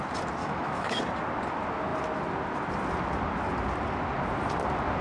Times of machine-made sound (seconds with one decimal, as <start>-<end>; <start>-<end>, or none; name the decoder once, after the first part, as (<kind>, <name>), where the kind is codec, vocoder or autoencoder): 0.4-1.0 (autoencoder, DAC-VAE)